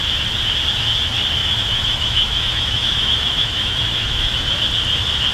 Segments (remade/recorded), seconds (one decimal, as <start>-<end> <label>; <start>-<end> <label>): 0.0-1.4 recorded; 1.4-4.6 remade; 4.6-5.3 recorded